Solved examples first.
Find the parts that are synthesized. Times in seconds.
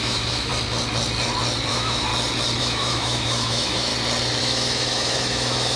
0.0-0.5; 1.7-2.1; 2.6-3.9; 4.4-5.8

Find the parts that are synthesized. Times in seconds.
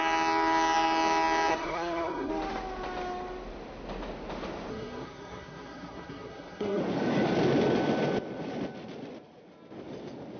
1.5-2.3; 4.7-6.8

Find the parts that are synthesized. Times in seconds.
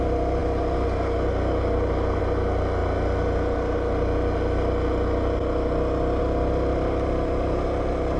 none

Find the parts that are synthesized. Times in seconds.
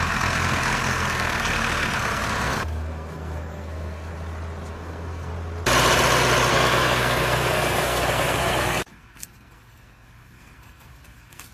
0.0-4.1; 4.7-5.3; 6.5-11.5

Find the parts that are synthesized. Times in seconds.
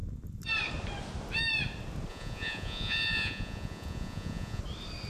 2.1-4.6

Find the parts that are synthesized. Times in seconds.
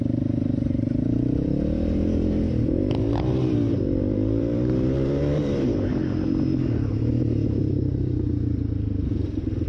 0.0-5.9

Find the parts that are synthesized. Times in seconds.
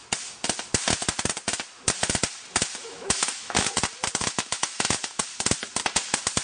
2.8-3.7; 4.2-5.2